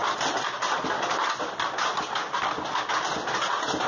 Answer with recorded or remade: recorded